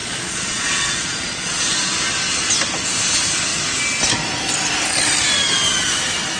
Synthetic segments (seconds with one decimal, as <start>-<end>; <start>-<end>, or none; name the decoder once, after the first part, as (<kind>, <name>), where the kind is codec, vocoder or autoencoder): 0.0-1.6 (vocoder, Vocos)